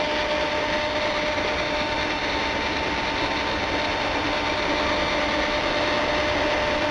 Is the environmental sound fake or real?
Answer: real